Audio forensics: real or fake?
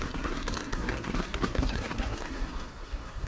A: fake